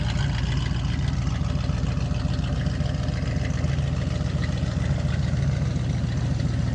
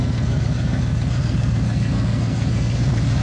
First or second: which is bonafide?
first